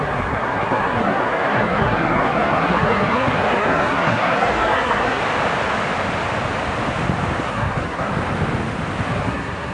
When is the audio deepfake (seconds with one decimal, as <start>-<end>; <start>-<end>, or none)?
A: 0.0-5.2; 7.4-8.1; 9.1-9.7

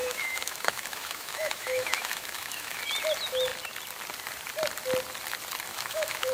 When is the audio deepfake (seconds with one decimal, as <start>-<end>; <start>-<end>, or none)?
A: 0.0-2.8; 5.7-6.3